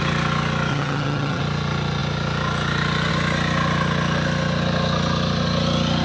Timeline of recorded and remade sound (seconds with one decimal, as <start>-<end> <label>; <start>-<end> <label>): 0.0-0.7 recorded; 0.7-1.4 remade; 1.4-6.0 recorded